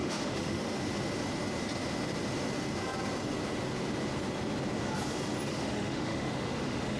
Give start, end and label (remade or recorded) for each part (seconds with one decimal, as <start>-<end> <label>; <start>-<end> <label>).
0.0-0.8 remade; 0.8-5.5 recorded; 5.5-7.0 remade